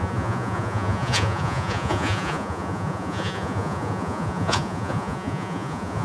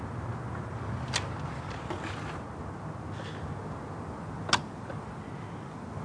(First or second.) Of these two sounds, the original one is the second